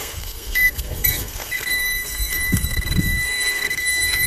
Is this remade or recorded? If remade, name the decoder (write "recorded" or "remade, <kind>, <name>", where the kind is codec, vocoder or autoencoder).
remade, codec, SNAC